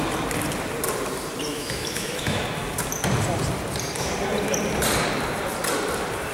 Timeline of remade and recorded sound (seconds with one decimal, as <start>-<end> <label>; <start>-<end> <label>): 0.0-1.5 recorded; 1.5-2.4 remade; 2.4-6.3 recorded

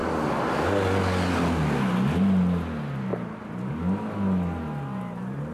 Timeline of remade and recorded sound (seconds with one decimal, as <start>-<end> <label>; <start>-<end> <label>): 0.0-3.1 recorded; 3.1-3.7 remade; 3.7-5.5 recorded

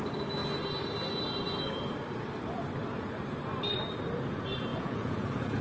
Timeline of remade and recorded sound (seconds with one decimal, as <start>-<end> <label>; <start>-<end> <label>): 0.0-4.7 recorded; 4.7-5.6 remade

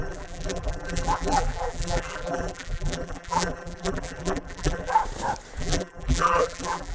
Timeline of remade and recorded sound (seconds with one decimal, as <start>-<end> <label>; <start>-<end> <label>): 0.0-5.0 remade; 5.0-5.6 recorded; 5.6-6.9 remade